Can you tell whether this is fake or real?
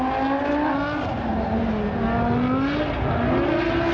real